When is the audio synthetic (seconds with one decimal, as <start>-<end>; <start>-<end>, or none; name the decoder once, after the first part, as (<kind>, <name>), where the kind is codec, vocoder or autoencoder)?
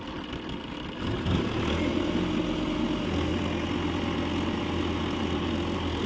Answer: none